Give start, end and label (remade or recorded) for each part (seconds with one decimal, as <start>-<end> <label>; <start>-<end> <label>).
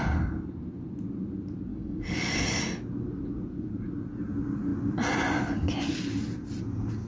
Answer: 0.0-1.7 recorded; 1.7-2.6 remade; 2.6-7.1 recorded